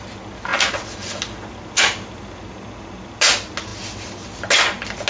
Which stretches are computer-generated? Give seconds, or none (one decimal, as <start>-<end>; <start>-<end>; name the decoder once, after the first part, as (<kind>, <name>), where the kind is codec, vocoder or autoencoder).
none